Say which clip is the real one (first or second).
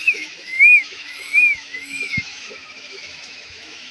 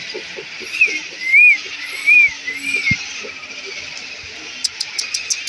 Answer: second